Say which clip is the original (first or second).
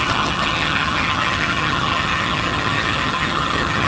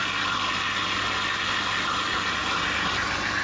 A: second